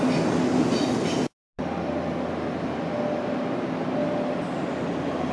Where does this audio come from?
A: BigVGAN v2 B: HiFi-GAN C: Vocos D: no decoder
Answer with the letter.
D